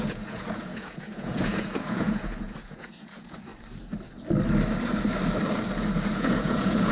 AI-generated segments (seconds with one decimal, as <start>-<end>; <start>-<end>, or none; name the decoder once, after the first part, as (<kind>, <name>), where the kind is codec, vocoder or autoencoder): 0.0-3.5 (vocoder, Vocos); 6.1-6.9